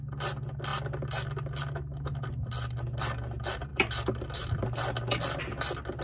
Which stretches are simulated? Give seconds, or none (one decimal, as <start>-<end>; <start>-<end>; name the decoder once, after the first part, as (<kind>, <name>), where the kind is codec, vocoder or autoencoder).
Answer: none